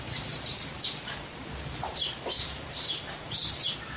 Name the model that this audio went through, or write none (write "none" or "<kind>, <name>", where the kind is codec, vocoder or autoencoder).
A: vocoder, BigVGAN v2